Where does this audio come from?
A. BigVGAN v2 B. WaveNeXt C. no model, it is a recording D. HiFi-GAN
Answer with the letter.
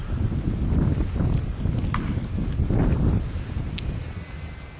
C